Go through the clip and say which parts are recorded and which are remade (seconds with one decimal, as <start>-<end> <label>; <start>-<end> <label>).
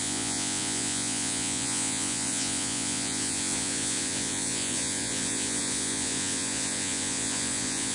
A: 0.0-7.9 remade